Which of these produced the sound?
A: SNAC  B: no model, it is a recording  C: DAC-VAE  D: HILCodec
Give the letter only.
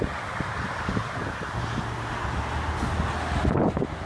B